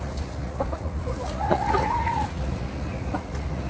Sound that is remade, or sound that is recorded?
remade